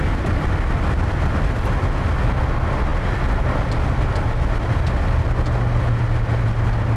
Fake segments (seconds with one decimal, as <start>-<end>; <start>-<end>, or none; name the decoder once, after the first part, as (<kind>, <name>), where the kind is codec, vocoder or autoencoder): none